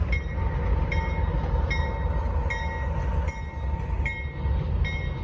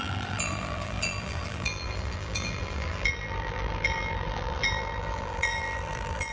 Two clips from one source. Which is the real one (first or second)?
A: first